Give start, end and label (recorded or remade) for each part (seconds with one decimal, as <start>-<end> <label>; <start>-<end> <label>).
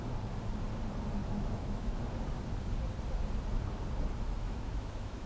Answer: 0.0-1.2 recorded; 1.2-2.0 remade; 2.0-4.4 recorded; 4.4-5.3 remade